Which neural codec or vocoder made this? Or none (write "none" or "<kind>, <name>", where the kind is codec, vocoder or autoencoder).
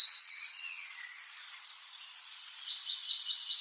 vocoder, Vocos